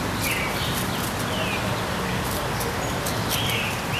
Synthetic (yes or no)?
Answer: no